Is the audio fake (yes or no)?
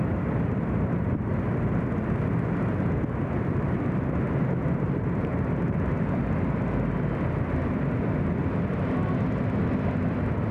no